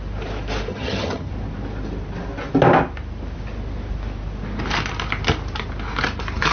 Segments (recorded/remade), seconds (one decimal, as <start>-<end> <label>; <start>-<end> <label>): 0.0-0.7 recorded; 0.7-1.3 remade; 1.3-6.5 recorded